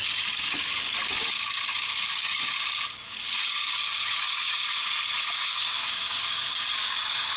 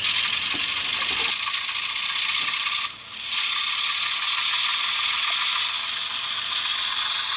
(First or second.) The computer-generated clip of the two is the first